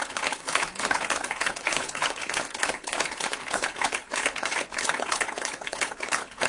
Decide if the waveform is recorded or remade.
remade